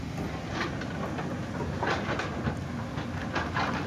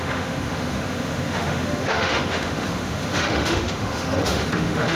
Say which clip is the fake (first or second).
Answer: second